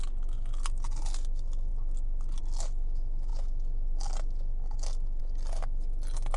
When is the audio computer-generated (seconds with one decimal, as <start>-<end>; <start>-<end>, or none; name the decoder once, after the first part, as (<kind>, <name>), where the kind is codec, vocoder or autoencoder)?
none